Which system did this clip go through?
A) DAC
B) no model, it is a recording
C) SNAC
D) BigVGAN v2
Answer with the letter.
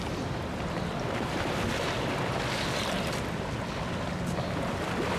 B